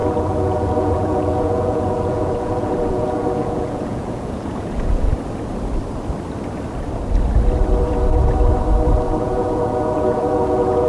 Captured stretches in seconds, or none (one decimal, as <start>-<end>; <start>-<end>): 5.1-9.2